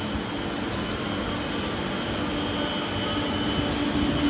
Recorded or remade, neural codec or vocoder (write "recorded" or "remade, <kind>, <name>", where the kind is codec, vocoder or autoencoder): recorded